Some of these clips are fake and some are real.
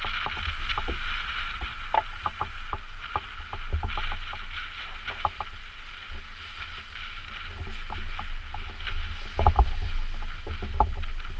real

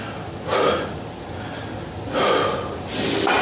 real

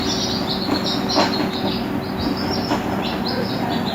real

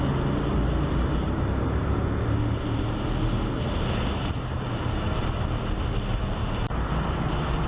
real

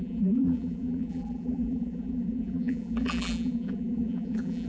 fake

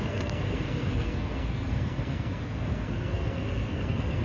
fake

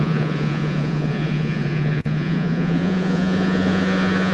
fake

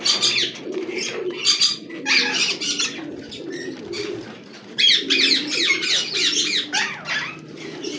real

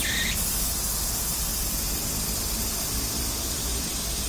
fake